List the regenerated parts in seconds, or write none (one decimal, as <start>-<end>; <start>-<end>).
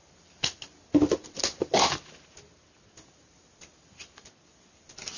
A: none